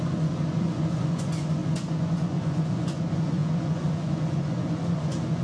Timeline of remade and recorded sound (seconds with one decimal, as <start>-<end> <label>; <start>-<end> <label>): 0.0-5.4 remade